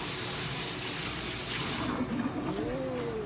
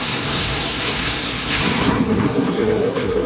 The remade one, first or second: second